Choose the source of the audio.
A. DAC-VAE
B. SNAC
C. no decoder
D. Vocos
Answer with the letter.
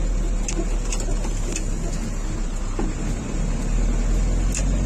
C